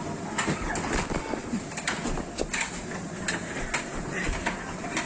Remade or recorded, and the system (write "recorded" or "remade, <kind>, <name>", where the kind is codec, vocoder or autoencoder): recorded